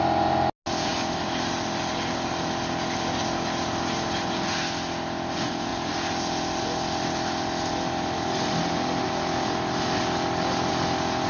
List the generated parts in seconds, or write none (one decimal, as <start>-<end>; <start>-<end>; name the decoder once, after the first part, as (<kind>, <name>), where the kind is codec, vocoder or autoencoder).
none